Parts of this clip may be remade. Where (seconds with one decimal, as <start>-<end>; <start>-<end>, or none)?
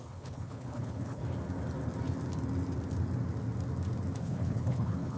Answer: 0.0-1.2; 4.2-5.2